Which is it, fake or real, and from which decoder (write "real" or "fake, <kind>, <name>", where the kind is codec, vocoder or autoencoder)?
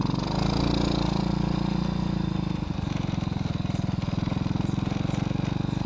real